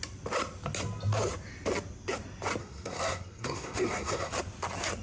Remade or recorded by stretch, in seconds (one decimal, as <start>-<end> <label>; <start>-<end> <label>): 0.0-2.6 recorded; 2.6-4.3 remade; 4.3-5.0 recorded